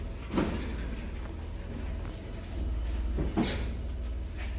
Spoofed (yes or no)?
no